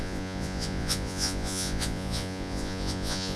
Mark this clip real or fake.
fake